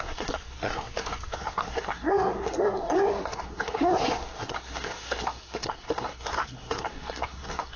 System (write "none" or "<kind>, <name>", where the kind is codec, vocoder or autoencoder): codec, SNAC